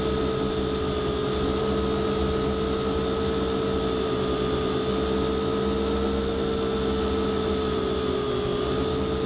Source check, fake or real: real